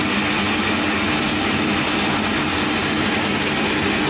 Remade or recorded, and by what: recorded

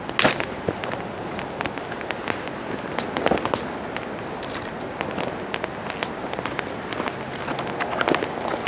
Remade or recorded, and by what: recorded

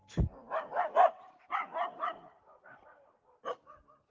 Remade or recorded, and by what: recorded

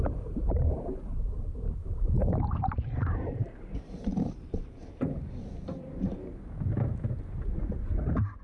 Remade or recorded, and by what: remade, vocoder, BigVGAN v2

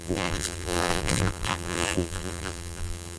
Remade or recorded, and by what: remade, vocoder, BigVGAN v2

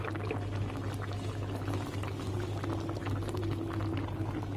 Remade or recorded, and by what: recorded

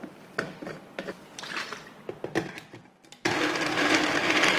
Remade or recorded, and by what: recorded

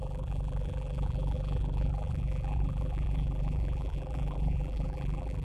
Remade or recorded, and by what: remade, vocoder, BigVGAN v2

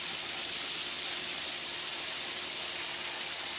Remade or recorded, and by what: remade, vocoder, BigVGAN v2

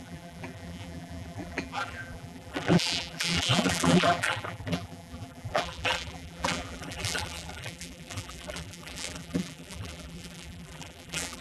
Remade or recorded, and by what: remade, vocoder, BigVGAN v2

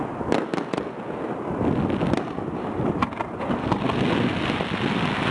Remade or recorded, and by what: recorded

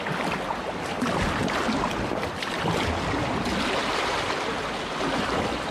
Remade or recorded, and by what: recorded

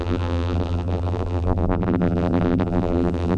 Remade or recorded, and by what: remade, vocoder, BigVGAN v2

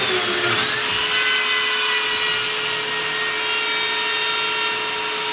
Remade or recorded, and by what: recorded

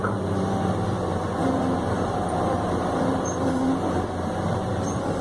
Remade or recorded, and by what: remade, vocoder, BigVGAN v2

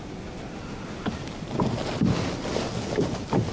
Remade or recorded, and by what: remade, vocoder, BigVGAN v2